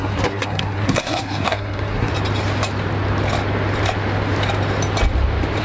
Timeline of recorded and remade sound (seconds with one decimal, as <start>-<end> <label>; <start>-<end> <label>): 0.0-2.1 remade; 2.1-5.6 recorded